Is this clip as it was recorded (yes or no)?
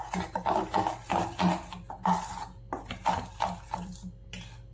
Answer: yes